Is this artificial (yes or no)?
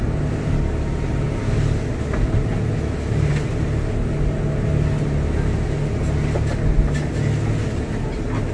no